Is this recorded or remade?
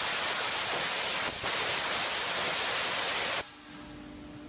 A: recorded